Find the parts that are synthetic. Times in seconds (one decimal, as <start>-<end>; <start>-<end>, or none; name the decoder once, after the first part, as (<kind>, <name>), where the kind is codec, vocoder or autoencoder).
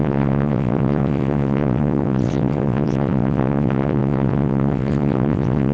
0.0-5.7 (vocoder, WaveNeXt)